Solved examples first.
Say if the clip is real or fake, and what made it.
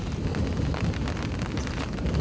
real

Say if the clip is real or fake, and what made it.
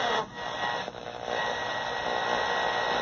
real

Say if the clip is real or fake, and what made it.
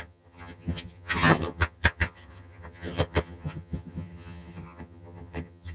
fake, vocoder, HiFi-GAN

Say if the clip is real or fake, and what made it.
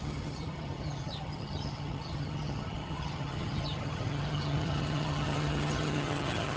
fake, vocoder, HiFi-GAN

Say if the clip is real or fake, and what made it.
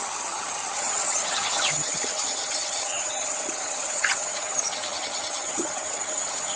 fake, vocoder, HiFi-GAN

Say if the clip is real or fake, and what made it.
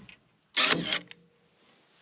real